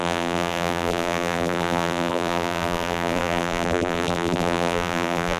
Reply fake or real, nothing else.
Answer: fake